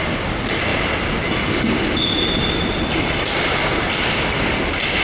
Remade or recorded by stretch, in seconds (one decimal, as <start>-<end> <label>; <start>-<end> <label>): 0.0-5.0 recorded